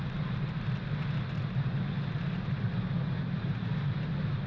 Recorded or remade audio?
recorded